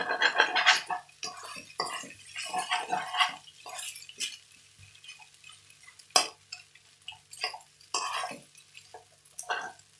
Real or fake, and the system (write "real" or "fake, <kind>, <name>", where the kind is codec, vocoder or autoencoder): real